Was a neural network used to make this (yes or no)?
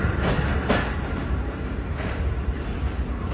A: no